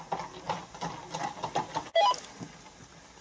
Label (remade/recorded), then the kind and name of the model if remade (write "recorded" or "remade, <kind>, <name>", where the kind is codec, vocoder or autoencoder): recorded